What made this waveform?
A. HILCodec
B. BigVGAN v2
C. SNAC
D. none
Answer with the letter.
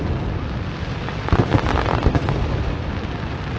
D